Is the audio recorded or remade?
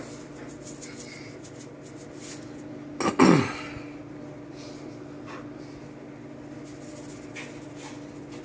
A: recorded